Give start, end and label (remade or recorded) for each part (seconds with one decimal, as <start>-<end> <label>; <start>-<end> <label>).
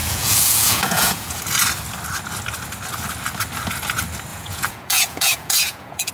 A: 0.0-1.4 remade; 1.4-4.3 recorded; 4.3-6.1 remade